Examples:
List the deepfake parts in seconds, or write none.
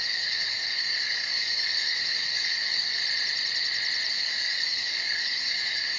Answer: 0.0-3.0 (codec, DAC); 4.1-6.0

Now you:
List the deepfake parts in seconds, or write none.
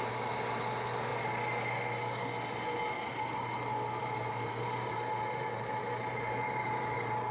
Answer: 0.0-1.1 (vocoder, BigVGAN v2); 4.0-7.3